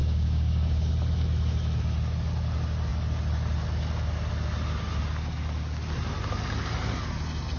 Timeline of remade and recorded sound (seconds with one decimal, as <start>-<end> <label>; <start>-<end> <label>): 0.0-0.9 remade; 0.9-7.6 recorded